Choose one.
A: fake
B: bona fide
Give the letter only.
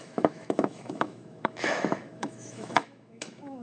A